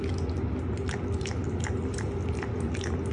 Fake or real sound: real